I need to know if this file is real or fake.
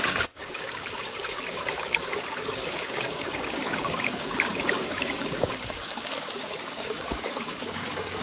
fake